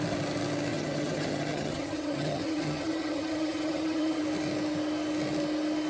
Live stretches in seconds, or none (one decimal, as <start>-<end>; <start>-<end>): 0.0-0.7; 4.2-5.9